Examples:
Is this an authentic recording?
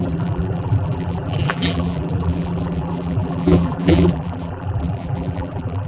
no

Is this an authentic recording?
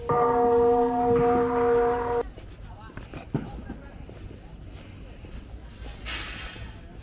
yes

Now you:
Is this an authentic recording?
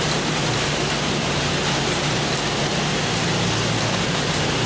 yes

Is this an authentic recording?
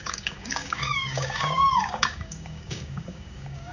no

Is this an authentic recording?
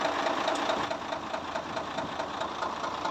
yes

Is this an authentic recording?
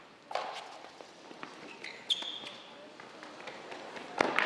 yes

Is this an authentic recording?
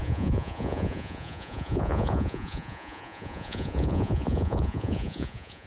no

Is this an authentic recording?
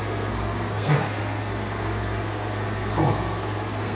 no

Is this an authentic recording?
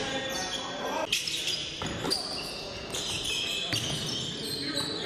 yes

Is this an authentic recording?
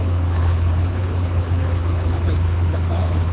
no